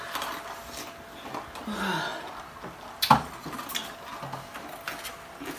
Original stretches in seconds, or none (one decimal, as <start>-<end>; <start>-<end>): 0.0-5.6